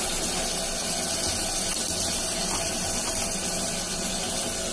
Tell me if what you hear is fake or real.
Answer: real